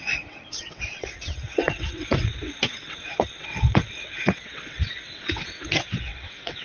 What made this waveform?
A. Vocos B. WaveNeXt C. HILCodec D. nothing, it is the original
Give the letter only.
B